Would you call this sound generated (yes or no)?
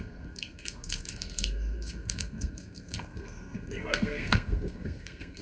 yes